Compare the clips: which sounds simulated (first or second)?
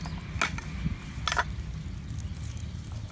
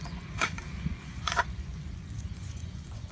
second